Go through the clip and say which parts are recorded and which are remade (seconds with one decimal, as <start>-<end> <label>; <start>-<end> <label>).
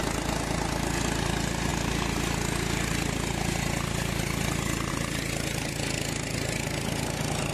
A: 0.0-7.5 recorded